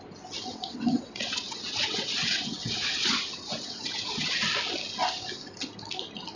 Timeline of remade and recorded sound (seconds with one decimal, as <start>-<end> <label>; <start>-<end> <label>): 0.0-0.5 recorded; 0.5-4.3 remade; 4.3-6.4 recorded